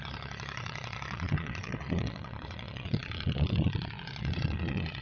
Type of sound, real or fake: fake